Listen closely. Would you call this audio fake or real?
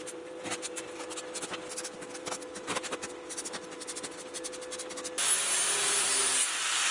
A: real